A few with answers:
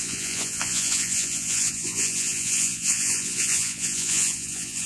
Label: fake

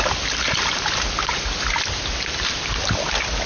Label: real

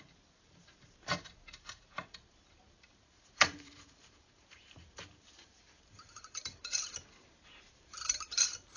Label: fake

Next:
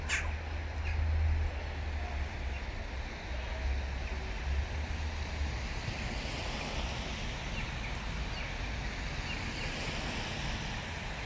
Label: real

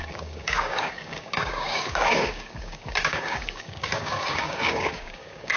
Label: fake